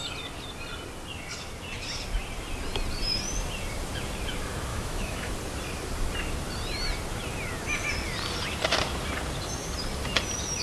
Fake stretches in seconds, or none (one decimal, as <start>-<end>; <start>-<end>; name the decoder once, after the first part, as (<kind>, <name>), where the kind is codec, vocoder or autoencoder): 4.7-5.3 (autoencoder, DAC-VAE)